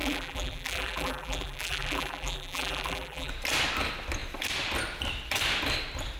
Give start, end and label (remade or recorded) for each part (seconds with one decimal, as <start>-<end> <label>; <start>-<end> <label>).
0.0-3.3 remade; 3.3-6.2 recorded

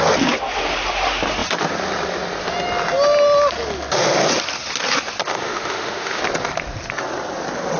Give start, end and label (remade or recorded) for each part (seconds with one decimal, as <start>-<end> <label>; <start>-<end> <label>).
0.0-5.3 recorded; 5.3-6.2 remade; 6.2-7.8 recorded

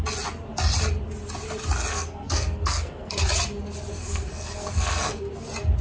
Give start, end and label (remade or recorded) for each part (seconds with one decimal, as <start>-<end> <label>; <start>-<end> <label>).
0.0-1.9 recorded; 1.9-3.2 remade; 3.2-3.9 recorded; 3.9-5.3 remade; 5.3-5.8 recorded

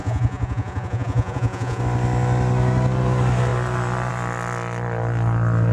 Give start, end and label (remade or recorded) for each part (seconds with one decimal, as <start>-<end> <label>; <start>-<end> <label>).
0.0-1.8 remade; 1.8-5.7 recorded

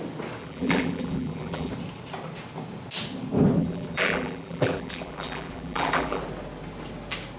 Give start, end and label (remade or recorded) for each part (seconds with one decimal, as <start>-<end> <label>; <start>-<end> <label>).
0.0-0.4 recorded; 0.4-1.7 remade; 1.7-3.6 recorded; 3.6-6.2 remade; 6.2-7.4 recorded